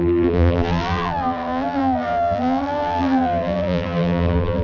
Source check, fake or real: fake